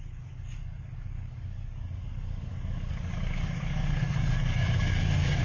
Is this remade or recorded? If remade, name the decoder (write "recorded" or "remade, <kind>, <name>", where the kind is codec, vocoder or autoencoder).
remade, codec, DAC